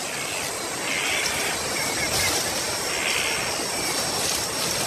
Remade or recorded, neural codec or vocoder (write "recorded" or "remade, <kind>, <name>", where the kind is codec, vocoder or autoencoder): recorded